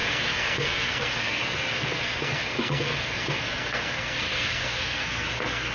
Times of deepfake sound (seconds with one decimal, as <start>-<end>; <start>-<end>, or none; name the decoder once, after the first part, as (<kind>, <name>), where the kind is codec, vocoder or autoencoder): 0.0-5.7 (codec, SNAC)